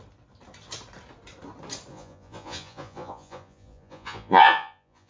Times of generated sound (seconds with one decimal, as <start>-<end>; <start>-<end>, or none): 1.9-5.1